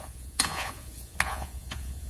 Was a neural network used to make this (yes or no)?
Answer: yes